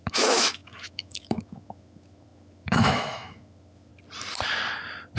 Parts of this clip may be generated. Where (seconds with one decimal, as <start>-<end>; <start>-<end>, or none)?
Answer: 0.0-3.9